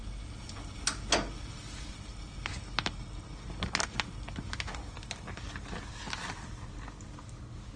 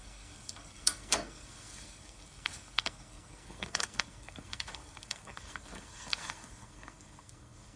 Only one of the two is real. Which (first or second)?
first